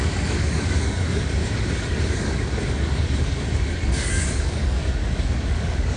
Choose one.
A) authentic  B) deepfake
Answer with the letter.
B